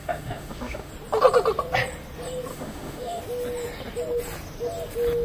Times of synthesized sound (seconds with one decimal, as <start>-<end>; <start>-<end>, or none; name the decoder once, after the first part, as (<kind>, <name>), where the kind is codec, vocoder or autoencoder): 0.0-0.9 (autoencoder, DAC-VAE); 2.5-3.2